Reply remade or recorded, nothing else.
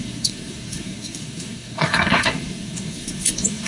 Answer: remade